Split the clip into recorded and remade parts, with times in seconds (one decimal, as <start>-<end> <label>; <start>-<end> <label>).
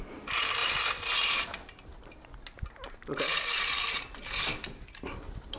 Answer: 0.0-5.6 recorded